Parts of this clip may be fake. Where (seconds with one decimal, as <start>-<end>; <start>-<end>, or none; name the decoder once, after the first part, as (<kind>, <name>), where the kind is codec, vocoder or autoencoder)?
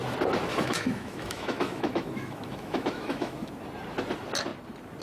0.5-3.5 (autoencoder, DAC-VAE)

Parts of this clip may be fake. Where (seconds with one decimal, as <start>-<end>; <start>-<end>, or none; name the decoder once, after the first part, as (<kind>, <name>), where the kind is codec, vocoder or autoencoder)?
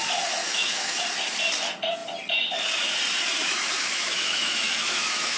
0.4-1.0 (autoencoder, DAC-VAE); 3.4-5.4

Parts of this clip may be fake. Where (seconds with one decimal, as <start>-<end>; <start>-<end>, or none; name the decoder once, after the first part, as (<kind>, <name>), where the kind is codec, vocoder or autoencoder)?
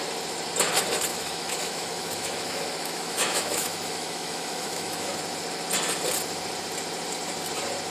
1.1-5.2 (autoencoder, DAC-VAE)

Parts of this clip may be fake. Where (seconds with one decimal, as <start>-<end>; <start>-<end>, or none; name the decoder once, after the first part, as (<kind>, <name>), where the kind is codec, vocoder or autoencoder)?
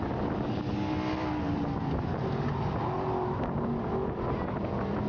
none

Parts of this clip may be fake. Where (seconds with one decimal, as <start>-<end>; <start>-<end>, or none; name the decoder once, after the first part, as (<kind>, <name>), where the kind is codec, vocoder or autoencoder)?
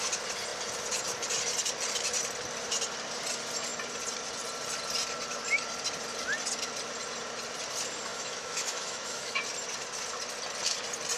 8.1-9.4 (autoencoder, DAC-VAE)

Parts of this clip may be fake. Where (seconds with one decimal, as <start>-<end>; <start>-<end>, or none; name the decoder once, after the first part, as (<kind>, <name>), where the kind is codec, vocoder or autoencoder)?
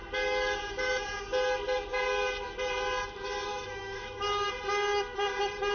3.5-4.5 (autoencoder, DAC-VAE)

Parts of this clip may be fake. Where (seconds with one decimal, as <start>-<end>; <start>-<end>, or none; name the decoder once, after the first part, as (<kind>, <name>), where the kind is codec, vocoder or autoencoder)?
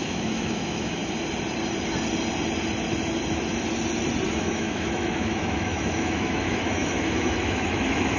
0.0-1.0 (autoencoder, DAC-VAE); 4.3-8.2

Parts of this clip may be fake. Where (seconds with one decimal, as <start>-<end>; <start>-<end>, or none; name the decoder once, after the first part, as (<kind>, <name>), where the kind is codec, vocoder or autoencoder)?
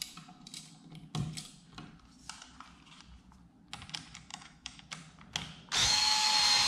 4.3-4.8 (autoencoder, DAC-VAE); 5.8-6.3